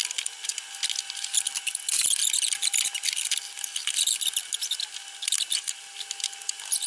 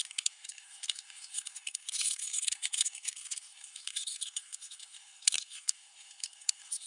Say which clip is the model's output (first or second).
second